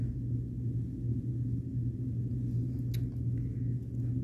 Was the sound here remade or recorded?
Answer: recorded